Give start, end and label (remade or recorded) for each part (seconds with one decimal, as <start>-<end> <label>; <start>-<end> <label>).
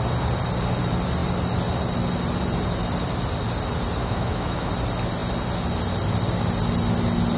0.0-4.0 recorded; 4.0-4.7 remade; 4.7-7.4 recorded